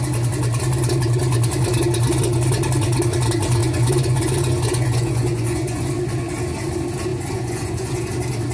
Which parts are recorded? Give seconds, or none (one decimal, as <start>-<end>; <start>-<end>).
0.0-3.6; 5.9-7.1; 8.1-8.5